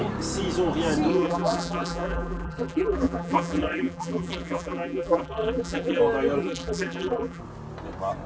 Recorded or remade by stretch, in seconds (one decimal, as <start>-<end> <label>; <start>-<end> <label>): 0.0-1.1 recorded; 1.1-6.0 remade; 6.0-6.4 recorded; 6.4-7.4 remade; 7.4-8.3 recorded